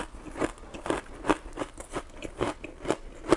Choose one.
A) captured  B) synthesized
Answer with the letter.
A